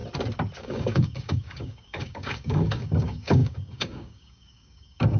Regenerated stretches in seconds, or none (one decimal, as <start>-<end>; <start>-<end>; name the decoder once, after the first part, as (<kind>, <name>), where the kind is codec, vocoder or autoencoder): 0.6-5.2 (codec, DAC)